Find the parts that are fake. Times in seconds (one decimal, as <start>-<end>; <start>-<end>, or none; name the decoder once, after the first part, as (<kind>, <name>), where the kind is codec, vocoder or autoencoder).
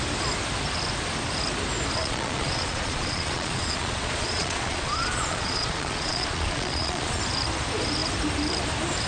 2.0-7.2 (vocoder, Vocos)